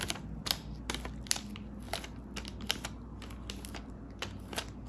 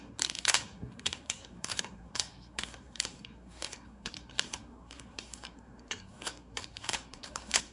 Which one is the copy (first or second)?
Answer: second